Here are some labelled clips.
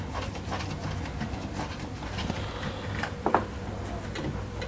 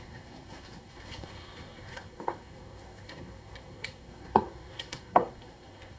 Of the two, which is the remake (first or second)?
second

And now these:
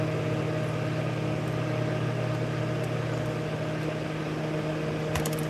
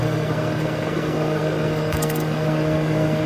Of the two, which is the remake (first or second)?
second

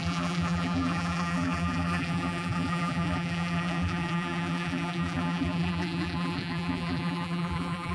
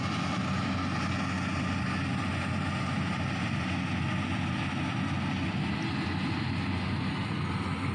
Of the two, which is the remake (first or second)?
first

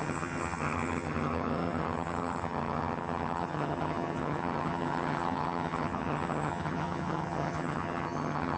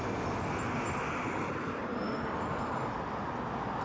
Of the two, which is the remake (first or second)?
first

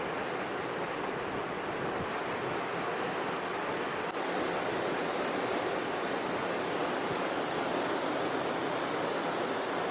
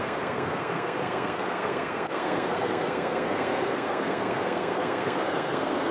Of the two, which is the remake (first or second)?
second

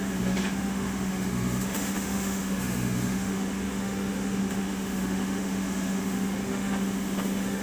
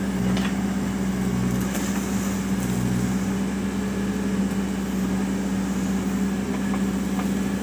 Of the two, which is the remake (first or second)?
first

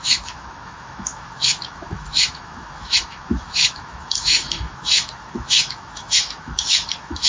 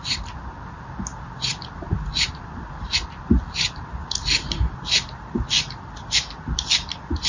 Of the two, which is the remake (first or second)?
first